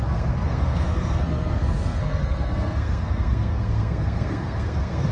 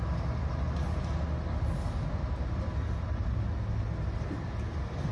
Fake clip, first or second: first